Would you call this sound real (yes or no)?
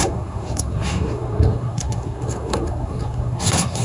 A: no